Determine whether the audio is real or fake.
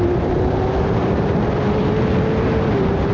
real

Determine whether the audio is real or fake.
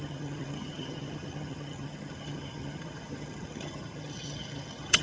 fake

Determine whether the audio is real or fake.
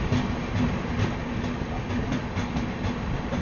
real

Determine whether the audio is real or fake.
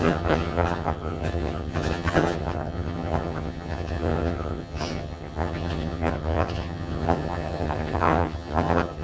fake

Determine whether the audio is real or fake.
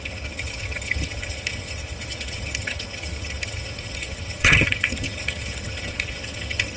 fake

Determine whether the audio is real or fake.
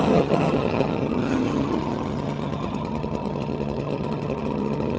fake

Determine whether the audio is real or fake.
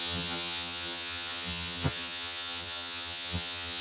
fake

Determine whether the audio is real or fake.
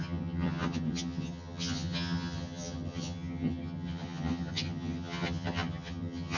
fake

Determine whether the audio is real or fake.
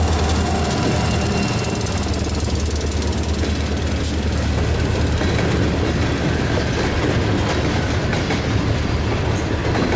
real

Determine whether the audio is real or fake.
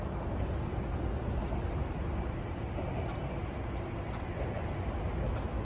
real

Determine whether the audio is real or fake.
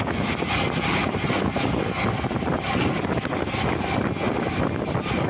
real